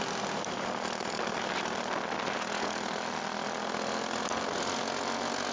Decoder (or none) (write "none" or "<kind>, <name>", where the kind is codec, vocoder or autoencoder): none